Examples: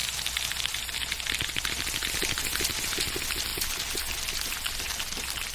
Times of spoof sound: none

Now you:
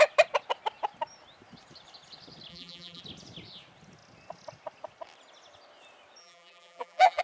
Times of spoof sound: 2.5-3.0 (vocoder, BigVGAN v2); 6.2-7.2

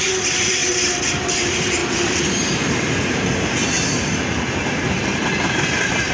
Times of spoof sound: 0.0-0.6 (vocoder, BigVGAN v2); 1.2-1.8; 5.5-6.1

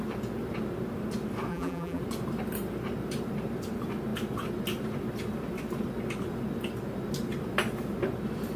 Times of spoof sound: 1.5-2.0 (vocoder, BigVGAN v2)

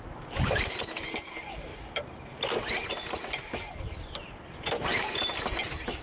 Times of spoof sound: 0.0-1.7 (vocoder, BigVGAN v2); 3.7-6.0

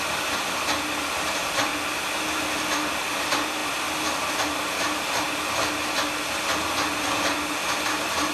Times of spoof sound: 0.0-1.7 (vocoder, BigVGAN v2); 2.9-3.6; 6.6-8.3

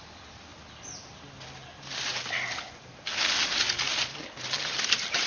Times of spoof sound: 0.0-0.5 (vocoder, BigVGAN v2); 1.2-1.6; 4.4-5.3

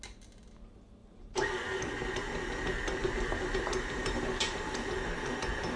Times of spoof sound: 1.0-1.8 (vocoder, BigVGAN v2); 3.0-4.9